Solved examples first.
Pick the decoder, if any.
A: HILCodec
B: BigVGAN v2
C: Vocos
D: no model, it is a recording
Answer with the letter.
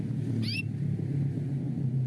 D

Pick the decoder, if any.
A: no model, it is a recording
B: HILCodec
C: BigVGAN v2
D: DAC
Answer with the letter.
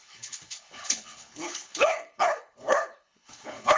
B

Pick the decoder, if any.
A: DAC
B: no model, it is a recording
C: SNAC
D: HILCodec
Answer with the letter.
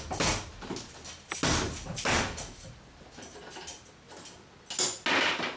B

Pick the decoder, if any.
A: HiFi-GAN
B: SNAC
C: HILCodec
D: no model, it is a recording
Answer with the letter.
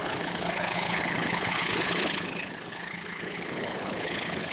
C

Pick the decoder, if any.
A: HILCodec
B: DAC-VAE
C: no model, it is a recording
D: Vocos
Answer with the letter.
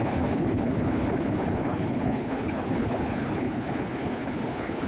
A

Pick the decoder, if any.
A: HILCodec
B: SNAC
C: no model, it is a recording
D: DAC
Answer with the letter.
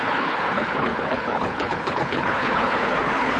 A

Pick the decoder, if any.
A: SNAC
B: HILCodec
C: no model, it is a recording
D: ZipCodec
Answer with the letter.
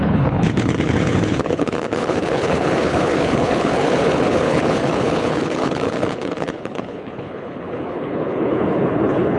B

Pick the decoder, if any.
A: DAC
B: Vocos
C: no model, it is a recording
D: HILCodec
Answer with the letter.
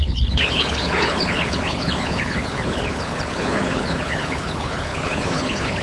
D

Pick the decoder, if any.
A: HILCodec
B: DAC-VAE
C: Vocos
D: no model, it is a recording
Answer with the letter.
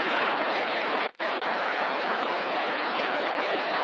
A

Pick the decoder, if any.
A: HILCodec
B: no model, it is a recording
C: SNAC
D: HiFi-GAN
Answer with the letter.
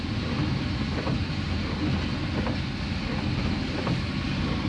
B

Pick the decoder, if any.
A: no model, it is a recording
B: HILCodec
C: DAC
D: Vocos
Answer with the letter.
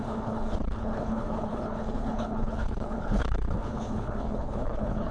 B